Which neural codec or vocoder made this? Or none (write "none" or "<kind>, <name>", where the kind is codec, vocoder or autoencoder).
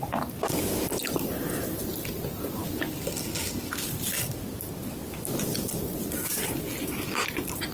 none